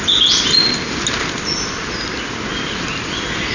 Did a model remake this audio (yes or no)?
no